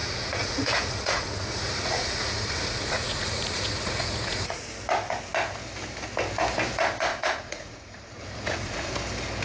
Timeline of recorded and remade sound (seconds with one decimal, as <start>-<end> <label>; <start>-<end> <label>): 0.0-4.7 remade; 4.7-7.1 recorded; 7.1-8.9 remade; 8.9-9.4 recorded